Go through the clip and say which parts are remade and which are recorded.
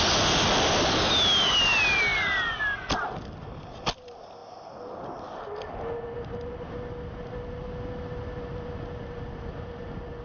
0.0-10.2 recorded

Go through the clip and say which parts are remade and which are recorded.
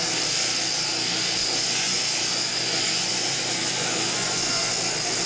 0.0-1.4 recorded; 1.4-2.0 remade; 2.0-2.4 recorded; 2.4-4.7 remade; 4.7-5.3 recorded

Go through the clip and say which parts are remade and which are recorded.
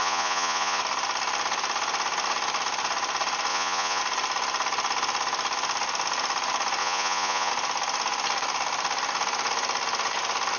0.0-0.8 remade; 0.8-3.5 recorded; 3.5-4.0 remade; 4.0-6.8 recorded; 6.8-7.5 remade; 7.5-10.6 recorded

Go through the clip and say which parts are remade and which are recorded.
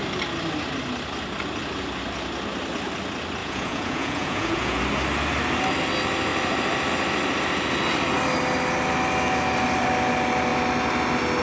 0.0-3.4 recorded; 3.4-4.8 remade; 4.8-11.4 recorded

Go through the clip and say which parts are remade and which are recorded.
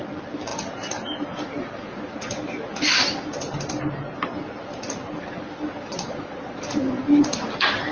0.0-5.9 recorded; 5.9-6.6 remade; 6.6-7.9 recorded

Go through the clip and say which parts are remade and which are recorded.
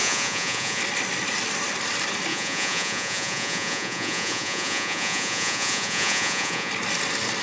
0.0-0.8 remade; 0.8-2.3 recorded; 2.3-6.7 remade; 6.7-7.4 recorded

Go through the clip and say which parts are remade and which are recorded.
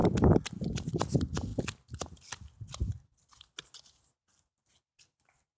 0.0-5.6 recorded